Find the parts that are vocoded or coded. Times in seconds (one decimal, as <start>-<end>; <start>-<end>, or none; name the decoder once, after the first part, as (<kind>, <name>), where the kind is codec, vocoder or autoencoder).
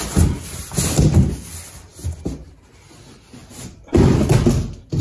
3.4-4.2 (vocoder, BigVGAN v2)